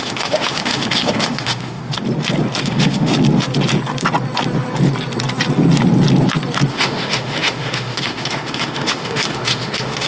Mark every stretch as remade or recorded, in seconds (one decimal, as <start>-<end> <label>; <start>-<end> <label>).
0.0-1.8 remade; 1.8-2.6 recorded; 2.6-3.1 remade; 3.1-6.7 recorded; 6.7-10.1 remade

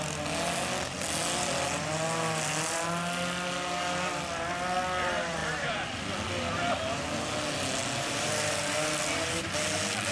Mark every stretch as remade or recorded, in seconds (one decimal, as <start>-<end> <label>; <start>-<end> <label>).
0.0-10.1 recorded